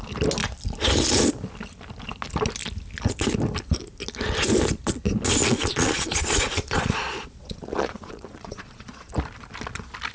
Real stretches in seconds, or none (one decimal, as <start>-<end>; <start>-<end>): 0.0-5.4; 9.1-10.1